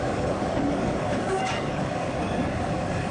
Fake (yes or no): yes